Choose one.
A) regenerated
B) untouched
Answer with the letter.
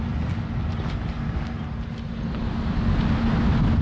B